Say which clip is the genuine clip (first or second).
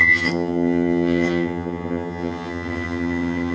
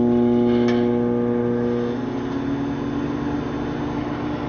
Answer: second